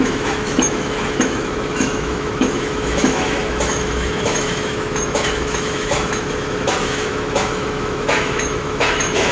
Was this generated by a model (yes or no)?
yes